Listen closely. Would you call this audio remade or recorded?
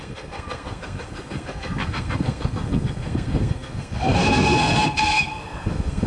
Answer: remade